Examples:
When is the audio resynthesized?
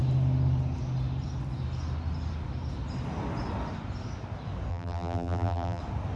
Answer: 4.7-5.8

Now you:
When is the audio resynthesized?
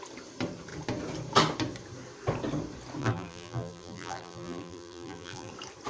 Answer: 3.0-5.5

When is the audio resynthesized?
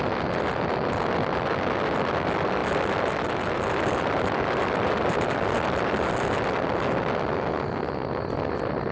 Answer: 2.6-6.1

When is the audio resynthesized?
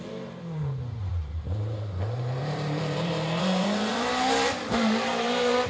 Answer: 0.0-5.7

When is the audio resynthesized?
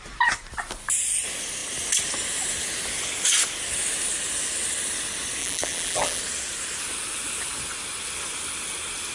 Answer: 5.4-6.2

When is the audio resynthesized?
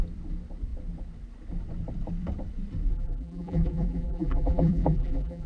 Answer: 2.9-5.5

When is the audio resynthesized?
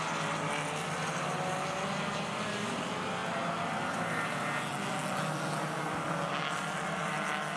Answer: none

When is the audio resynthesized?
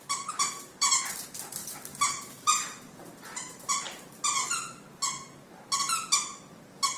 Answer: 0.0-7.0